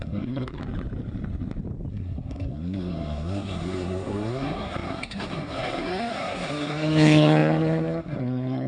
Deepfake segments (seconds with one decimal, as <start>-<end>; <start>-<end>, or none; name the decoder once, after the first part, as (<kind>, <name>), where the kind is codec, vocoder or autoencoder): 0.0-0.6 (codec, SNAC); 1.9-8.7